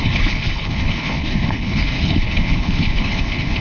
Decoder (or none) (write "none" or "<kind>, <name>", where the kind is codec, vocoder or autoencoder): codec, HILCodec